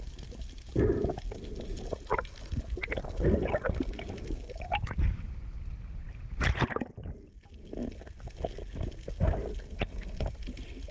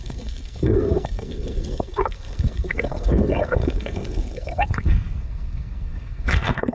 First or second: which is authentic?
first